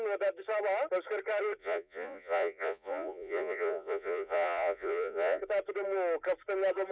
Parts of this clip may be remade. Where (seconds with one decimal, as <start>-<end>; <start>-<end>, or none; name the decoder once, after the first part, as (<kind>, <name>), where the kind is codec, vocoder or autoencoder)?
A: 1.6-5.4 (vocoder, Vocos)